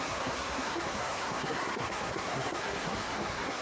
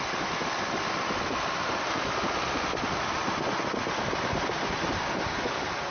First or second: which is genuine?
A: second